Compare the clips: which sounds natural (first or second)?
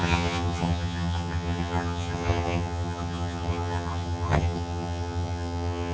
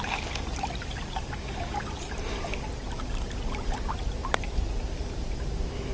second